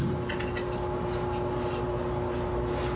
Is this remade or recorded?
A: recorded